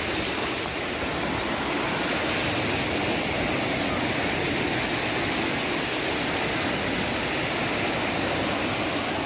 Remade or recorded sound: recorded